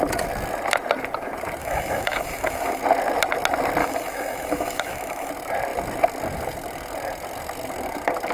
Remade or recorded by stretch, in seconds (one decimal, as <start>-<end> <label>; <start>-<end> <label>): 0.0-1.6 recorded; 1.6-2.8 remade; 2.8-3.8 recorded; 3.8-5.3 remade; 5.3-8.3 recorded